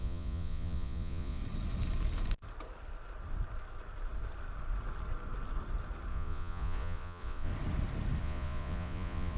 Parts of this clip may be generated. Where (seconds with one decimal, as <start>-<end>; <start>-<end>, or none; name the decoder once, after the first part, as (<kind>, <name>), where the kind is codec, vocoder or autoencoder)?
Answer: 0.0-1.4 (vocoder, Vocos); 6.1-7.5; 8.2-9.4